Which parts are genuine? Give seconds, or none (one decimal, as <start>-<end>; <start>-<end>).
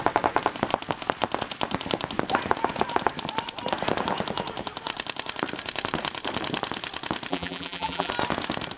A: 0.0-7.3; 8.1-8.8